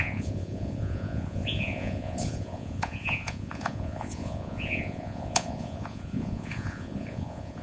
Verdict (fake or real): fake